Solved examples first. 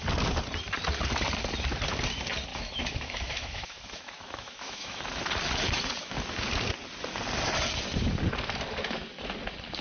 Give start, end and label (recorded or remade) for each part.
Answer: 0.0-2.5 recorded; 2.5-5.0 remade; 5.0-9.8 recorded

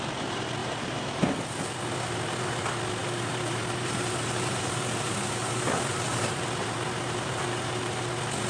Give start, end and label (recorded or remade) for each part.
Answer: 0.0-0.6 recorded; 0.6-1.2 remade; 1.2-3.0 recorded; 3.0-7.9 remade; 7.9-8.5 recorded